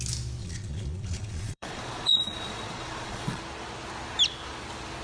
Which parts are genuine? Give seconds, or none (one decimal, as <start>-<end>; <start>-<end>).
0.0-0.4; 3.4-5.0